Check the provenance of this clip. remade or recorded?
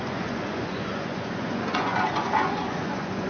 remade